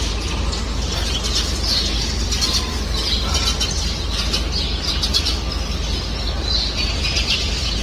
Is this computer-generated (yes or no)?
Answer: no